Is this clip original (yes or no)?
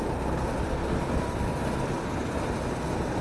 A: yes